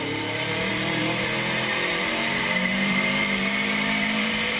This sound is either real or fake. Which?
fake